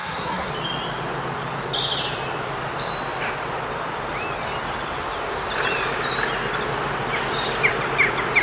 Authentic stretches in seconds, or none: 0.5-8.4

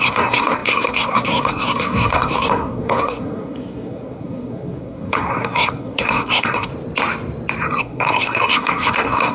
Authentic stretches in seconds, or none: 6.7-7.8

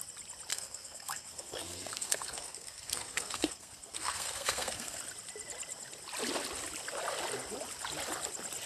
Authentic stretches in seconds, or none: 0.0-0.5; 5.0-8.7

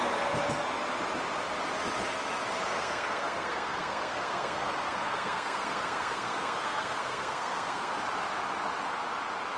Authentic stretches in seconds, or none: 0.0-2.7; 7.9-9.6

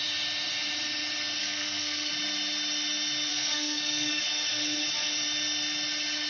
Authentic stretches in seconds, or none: 0.0-1.4; 2.1-3.3; 4.2-6.3